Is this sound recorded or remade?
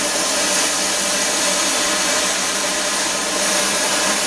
remade